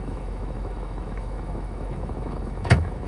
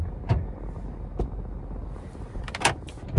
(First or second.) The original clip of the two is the second